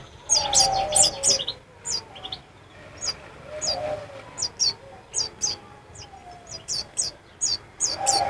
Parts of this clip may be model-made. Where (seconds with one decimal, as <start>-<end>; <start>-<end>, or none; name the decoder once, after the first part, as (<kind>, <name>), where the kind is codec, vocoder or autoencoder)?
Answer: 6.2-7.0 (vocoder, BigVGAN v2)